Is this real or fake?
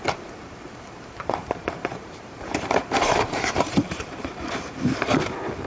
fake